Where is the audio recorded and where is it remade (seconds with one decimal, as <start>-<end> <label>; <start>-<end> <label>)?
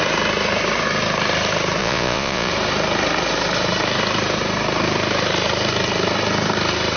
0.0-1.8 recorded; 1.8-2.5 remade; 2.5-7.0 recorded